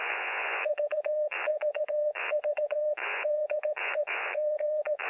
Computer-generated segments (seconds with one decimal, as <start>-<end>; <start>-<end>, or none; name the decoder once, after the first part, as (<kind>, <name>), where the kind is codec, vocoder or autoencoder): 0.0-5.1 (vocoder, Vocos)